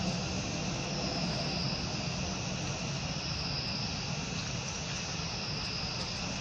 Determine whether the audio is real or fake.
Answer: real